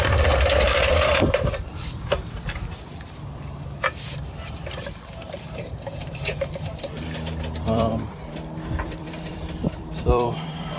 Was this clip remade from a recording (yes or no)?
yes